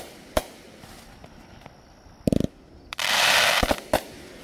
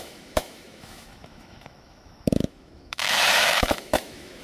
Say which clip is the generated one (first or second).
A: second